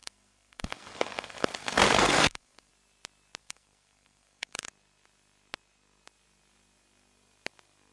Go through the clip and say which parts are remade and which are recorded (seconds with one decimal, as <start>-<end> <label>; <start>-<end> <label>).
0.0-2.7 remade; 2.7-3.4 recorded; 3.4-4.7 remade; 4.7-7.9 recorded